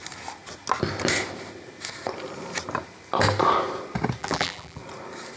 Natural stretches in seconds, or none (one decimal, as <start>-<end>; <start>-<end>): 0.0-4.2; 4.8-5.4